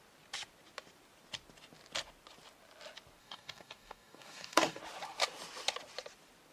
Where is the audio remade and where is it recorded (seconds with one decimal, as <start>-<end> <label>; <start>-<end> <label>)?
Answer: 0.0-3.2 recorded; 3.2-4.8 remade; 4.8-6.5 recorded